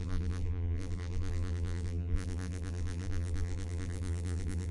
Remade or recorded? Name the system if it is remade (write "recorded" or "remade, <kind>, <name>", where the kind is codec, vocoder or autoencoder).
remade, vocoder, BigVGAN v2